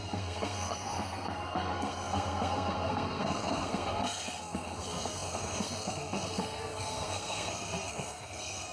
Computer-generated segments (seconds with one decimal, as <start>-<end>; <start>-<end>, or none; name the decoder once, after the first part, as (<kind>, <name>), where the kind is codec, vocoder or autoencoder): 0.0-8.7 (codec, SNAC)